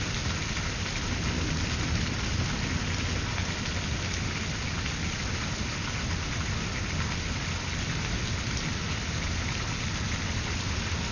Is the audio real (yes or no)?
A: yes